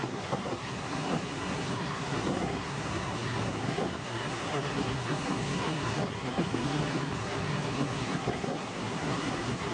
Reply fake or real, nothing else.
fake